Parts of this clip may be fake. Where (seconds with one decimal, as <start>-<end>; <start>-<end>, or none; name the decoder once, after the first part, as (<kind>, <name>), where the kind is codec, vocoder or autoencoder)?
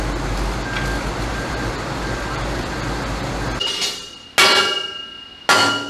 1.3-3.3 (vocoder, BigVGAN v2)